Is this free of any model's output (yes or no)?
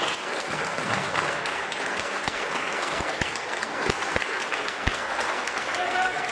no